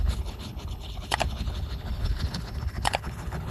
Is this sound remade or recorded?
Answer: remade